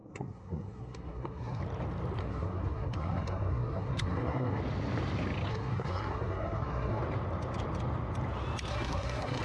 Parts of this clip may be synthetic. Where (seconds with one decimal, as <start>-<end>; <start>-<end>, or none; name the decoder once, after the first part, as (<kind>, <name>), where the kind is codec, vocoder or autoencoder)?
0.0-1.6 (codec, SNAC); 2.2-4.6; 5.5-7.0; 8.7-9.4